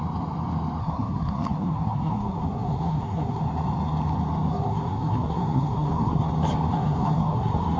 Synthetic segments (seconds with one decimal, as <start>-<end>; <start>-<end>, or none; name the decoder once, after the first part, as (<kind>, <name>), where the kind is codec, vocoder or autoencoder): 0.8-3.4 (codec, SNAC); 4.5-6.3; 6.7-7.8